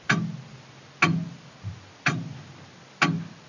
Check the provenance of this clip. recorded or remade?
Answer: recorded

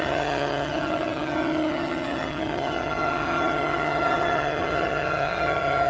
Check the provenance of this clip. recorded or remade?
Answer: remade